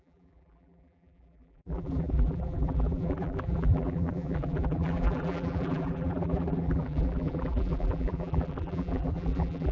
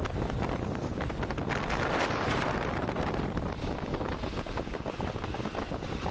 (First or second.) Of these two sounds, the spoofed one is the first